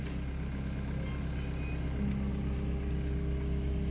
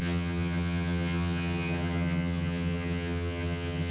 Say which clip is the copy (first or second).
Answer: second